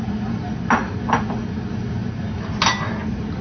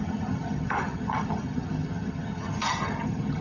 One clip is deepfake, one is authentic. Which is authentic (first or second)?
first